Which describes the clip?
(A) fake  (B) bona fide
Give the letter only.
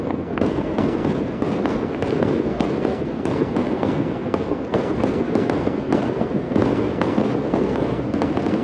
A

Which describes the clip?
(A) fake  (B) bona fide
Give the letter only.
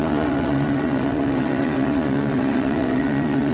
A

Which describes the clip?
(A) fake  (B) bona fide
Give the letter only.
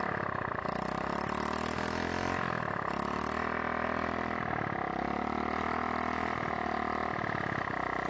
B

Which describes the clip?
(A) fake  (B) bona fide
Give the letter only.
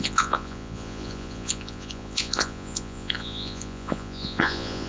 A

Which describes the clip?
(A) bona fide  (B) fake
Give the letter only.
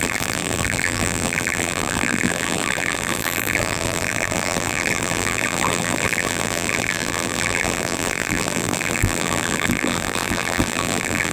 B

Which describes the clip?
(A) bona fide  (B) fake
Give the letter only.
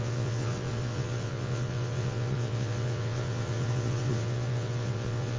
B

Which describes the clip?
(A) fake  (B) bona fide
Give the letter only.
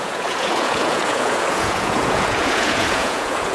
A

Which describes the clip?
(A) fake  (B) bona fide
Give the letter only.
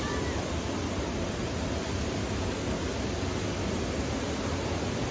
B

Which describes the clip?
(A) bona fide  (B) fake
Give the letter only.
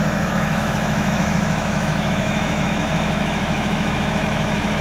B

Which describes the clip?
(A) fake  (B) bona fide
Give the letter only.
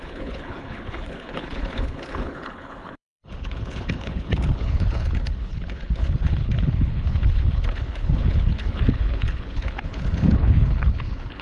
A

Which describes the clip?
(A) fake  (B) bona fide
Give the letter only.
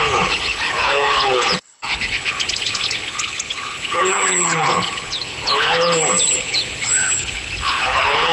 A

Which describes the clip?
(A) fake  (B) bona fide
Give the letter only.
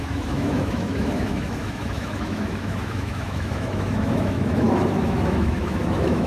A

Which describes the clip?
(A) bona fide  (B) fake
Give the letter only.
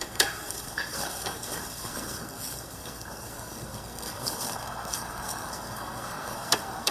B